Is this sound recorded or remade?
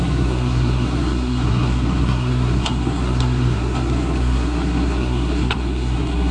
remade